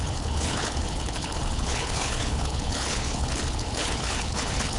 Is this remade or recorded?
remade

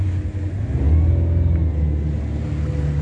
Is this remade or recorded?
recorded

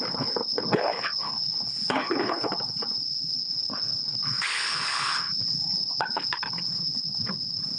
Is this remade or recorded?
remade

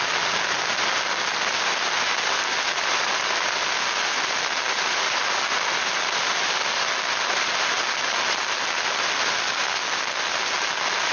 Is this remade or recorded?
recorded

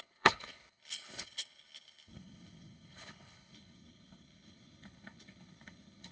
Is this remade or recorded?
remade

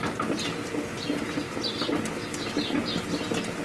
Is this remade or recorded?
recorded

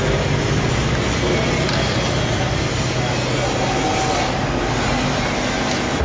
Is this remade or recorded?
recorded